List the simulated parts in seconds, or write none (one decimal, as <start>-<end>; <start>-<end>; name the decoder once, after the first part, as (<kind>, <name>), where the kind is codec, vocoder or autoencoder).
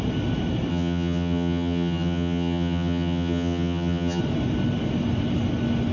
0.7-4.2 (vocoder, HiFi-GAN)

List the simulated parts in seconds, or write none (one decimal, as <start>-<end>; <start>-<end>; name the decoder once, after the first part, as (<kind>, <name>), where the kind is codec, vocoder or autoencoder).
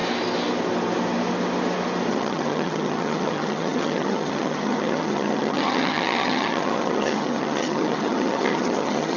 2.1-9.2 (vocoder, HiFi-GAN)